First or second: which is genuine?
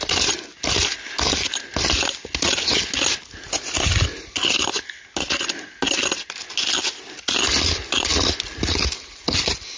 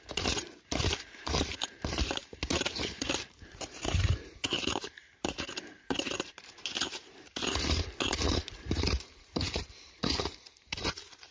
first